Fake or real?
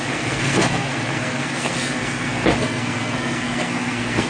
fake